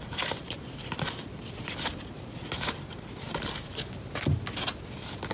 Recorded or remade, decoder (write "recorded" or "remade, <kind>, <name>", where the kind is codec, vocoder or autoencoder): recorded